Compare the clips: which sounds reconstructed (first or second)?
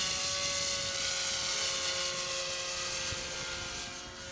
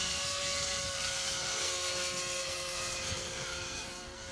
second